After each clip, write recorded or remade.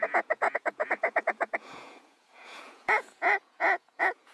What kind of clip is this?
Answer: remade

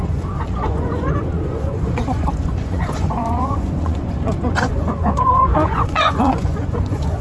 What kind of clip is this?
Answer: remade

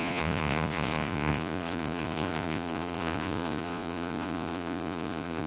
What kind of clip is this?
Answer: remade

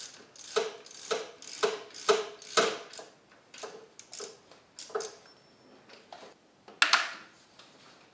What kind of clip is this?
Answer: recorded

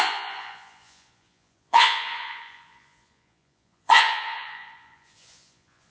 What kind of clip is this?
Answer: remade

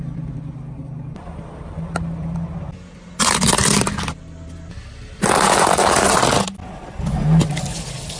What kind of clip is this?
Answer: recorded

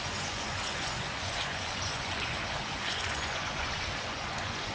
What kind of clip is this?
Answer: remade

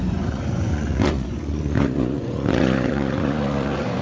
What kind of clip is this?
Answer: remade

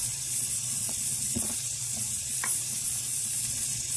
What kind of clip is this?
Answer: remade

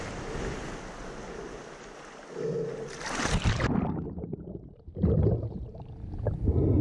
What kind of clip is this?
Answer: recorded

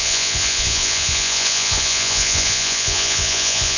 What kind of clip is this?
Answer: remade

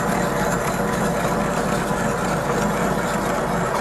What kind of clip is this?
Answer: recorded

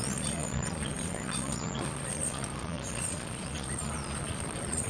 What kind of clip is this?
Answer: remade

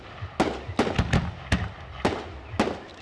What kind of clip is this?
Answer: recorded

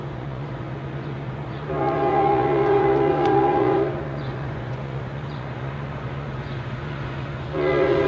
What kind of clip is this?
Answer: remade